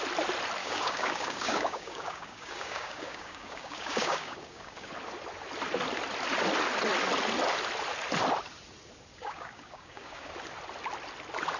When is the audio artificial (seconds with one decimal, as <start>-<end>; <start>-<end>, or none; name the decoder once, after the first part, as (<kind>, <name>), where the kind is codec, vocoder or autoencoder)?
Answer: 0.6-4.9 (codec, DAC); 9.1-10.3

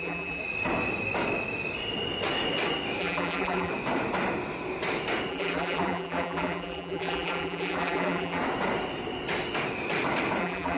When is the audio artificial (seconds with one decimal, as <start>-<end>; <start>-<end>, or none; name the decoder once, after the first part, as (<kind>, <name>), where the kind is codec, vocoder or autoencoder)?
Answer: 0.0-0.4 (vocoder, BigVGAN v2); 3.0-3.7; 5.3-8.4; 10.4-10.8

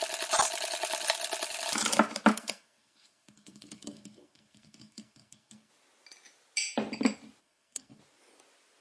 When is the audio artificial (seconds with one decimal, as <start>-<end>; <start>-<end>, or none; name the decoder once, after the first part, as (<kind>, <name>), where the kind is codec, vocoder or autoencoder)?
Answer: 2.3-5.7 (codec, SNAC); 7.4-8.0

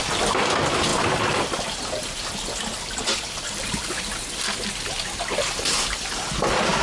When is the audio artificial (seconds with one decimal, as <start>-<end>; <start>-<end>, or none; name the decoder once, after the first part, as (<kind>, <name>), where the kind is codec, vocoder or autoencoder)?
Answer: none

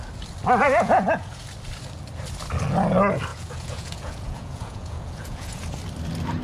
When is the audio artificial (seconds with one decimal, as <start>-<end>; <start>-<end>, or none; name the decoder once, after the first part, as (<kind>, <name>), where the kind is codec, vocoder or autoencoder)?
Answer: 0.6-1.4 (vocoder, Vocos); 3.3-5.7

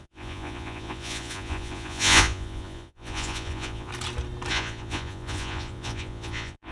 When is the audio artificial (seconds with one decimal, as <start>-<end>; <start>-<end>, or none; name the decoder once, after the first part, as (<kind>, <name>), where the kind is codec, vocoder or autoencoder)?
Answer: 0.0-3.9 (vocoder, Vocos); 4.5-6.7

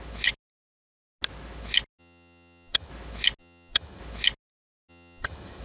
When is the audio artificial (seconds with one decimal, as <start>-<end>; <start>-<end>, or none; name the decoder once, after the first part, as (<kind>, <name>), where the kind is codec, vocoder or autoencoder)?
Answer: 2.0-2.9 (vocoder, HiFi-GAN); 3.4-4.0; 4.9-5.6

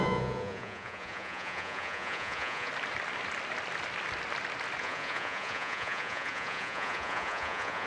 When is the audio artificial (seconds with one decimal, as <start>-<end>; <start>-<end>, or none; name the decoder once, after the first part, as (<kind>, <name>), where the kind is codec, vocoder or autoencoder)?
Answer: 0.0-2.7 (vocoder, Vocos); 4.8-7.9